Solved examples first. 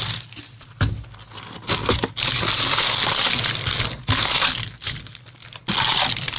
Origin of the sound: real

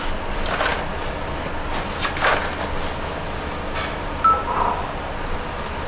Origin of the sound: real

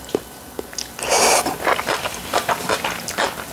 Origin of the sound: real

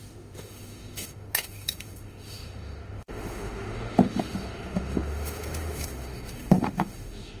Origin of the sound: fake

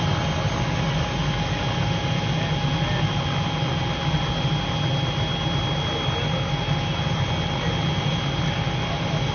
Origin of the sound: real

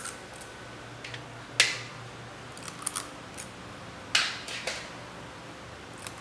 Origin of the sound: real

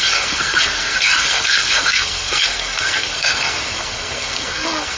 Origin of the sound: fake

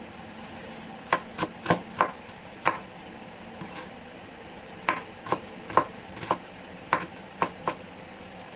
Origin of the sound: fake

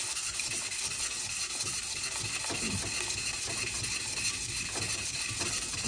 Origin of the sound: real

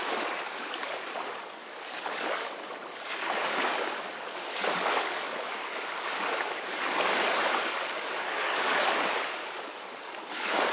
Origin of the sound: fake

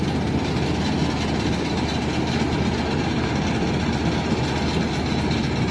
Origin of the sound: real